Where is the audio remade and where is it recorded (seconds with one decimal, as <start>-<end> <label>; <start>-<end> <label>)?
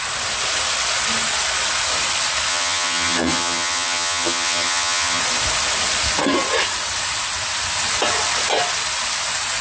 0.0-2.5 recorded; 2.5-5.2 remade; 5.2-9.6 recorded